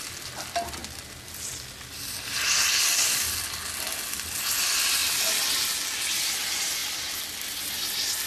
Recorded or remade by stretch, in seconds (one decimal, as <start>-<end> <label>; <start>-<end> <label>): 0.0-8.3 recorded